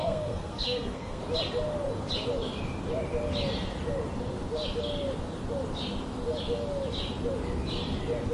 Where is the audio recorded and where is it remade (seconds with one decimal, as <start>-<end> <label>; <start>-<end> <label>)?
0.0-1.2 remade; 1.2-8.3 recorded